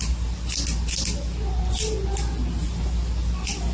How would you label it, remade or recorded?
recorded